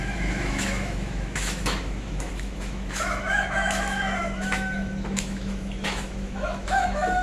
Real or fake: fake